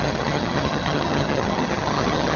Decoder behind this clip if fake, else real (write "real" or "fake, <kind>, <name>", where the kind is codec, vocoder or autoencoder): fake, vocoder, HiFi-GAN